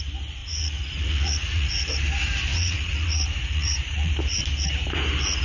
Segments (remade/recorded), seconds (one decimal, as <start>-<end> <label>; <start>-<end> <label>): 0.0-0.4 recorded; 0.4-1.7 remade; 1.7-2.5 recorded; 2.5-4.1 remade; 4.1-5.4 recorded